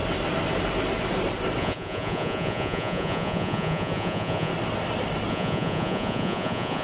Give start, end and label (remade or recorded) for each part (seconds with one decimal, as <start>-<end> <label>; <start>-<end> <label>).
0.0-1.6 recorded; 1.6-4.5 remade; 4.5-5.3 recorded; 5.3-6.8 remade